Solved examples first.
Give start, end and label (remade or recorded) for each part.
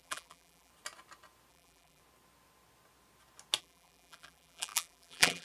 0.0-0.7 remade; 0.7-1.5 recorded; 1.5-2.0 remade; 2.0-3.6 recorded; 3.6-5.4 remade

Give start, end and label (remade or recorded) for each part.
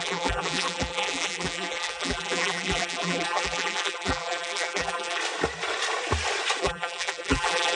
0.0-5.2 remade; 5.2-6.6 recorded; 6.6-7.7 remade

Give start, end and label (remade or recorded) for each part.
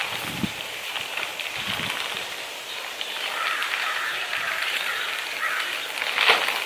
0.0-3.6 recorded; 3.6-5.1 remade; 5.1-6.7 recorded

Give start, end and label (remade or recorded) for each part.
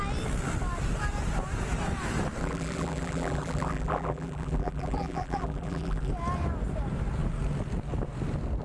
0.0-2.4 recorded; 2.4-6.1 remade; 6.1-8.6 recorded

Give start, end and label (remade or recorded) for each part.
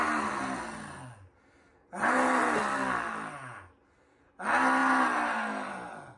0.0-6.2 recorded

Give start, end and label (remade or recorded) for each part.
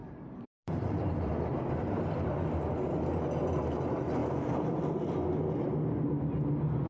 0.0-1.1 remade; 1.1-4.2 recorded; 4.2-4.8 remade; 4.8-6.9 recorded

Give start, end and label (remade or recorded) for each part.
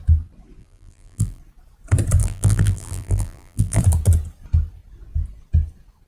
0.0-0.6 recorded; 0.6-1.4 remade; 1.4-2.2 recorded; 2.2-3.8 remade; 3.8-6.1 recorded